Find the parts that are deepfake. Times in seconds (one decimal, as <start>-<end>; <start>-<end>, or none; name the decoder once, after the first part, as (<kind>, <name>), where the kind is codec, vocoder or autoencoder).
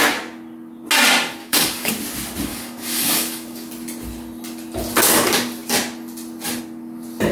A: 1.4-1.9 (codec, DAC); 2.5-3.7